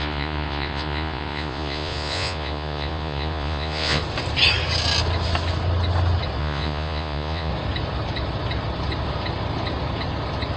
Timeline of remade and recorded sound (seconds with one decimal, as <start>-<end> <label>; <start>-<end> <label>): 0.0-4.0 remade; 4.0-6.4 recorded; 6.4-7.5 remade; 7.5-10.6 recorded

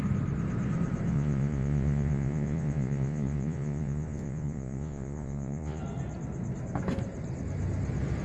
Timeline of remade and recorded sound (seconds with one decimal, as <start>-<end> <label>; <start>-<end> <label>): 0.0-1.1 recorded; 1.1-5.8 remade; 5.8-8.2 recorded

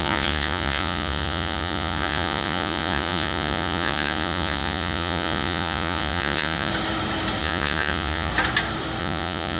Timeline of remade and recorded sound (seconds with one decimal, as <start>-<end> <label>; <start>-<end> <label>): 0.0-6.7 remade; 6.7-7.4 recorded; 7.4-8.3 remade; 8.3-9.0 recorded; 9.0-9.6 remade

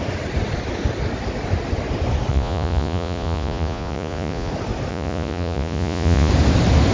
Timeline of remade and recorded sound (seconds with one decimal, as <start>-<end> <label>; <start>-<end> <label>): 0.0-2.3 recorded; 2.3-4.5 remade; 4.5-4.9 recorded; 4.9-6.3 remade; 6.3-6.9 recorded

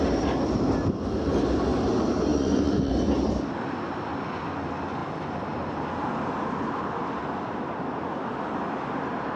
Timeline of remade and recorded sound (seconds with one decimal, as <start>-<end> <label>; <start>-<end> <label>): 0.0-2.3 recorded; 2.3-2.9 remade; 2.9-9.4 recorded

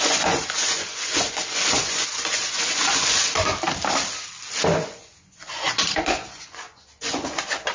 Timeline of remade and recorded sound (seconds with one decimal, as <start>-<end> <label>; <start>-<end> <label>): 0.0-3.5 remade; 3.5-4.8 recorded; 4.8-7.7 remade

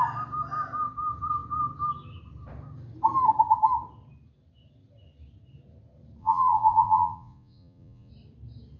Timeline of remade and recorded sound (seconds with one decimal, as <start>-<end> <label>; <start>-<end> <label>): 0.0-6.2 recorded; 6.2-8.1 remade; 8.1-8.8 recorded

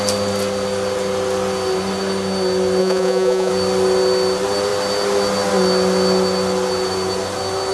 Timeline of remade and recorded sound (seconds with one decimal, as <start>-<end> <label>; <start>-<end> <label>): 0.0-2.8 recorded; 2.8-3.5 remade; 3.5-7.7 recorded